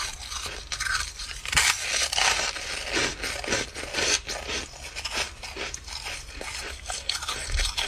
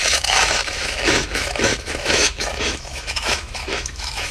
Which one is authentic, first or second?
first